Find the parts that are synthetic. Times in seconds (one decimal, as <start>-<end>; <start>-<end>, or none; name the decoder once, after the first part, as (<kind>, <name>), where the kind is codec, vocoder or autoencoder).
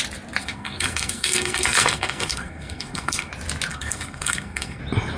0.4-3.3 (codec, SNAC); 3.7-4.8